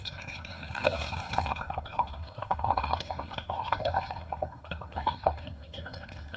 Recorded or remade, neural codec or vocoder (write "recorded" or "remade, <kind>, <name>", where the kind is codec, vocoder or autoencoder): remade, codec, SNAC